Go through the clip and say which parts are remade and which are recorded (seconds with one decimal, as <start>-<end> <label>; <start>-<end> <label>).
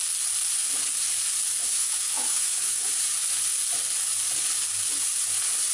0.0-1.6 recorded; 1.6-2.9 remade; 2.9-5.7 recorded